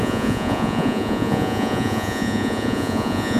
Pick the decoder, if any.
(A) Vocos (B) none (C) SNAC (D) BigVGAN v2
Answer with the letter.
A